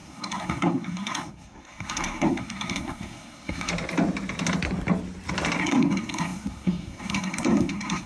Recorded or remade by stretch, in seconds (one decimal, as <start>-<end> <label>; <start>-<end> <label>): 0.0-3.7 remade; 3.7-5.6 recorded; 5.6-8.1 remade